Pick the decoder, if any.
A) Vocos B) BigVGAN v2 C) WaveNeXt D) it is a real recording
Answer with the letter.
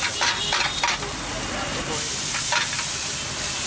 D